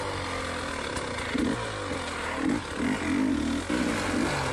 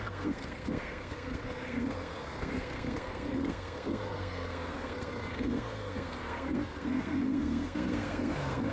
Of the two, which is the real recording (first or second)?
first